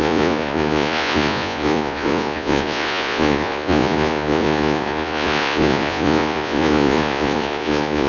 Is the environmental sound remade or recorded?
remade